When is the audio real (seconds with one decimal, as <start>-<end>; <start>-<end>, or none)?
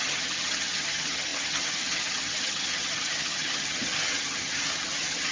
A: none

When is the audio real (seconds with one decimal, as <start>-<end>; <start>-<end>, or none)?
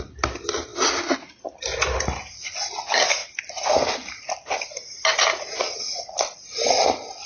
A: 0.0-7.3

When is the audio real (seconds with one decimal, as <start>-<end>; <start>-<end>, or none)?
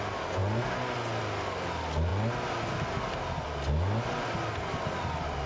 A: 0.0-5.5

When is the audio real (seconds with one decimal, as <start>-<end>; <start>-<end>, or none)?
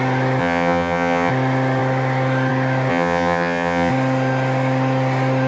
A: 0.0-0.4; 1.3-2.9; 3.9-5.5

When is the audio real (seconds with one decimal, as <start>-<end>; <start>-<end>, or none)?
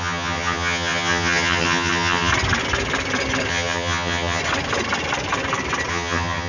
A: 2.3-3.5; 4.4-5.9